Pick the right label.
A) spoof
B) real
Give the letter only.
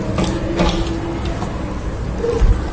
B